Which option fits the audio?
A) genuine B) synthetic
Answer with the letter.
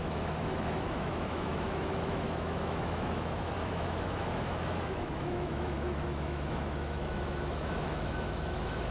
B